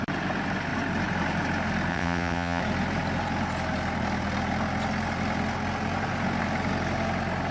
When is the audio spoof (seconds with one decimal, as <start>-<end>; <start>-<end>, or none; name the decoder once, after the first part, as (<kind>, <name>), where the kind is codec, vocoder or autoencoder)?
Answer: 1.9-2.6 (vocoder, WaveNeXt)